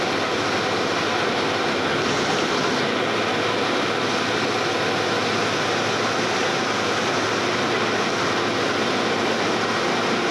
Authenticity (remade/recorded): recorded